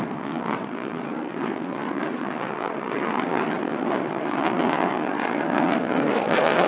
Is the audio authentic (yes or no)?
no